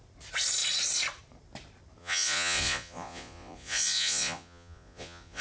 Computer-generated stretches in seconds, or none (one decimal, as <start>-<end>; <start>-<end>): 2.0-5.4